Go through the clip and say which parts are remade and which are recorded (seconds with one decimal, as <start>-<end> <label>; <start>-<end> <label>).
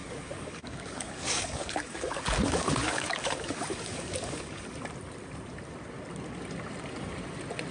0.0-4.6 remade; 4.6-7.7 recorded